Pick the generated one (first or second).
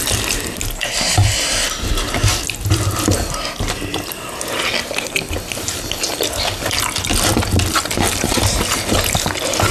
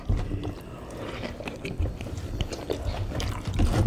second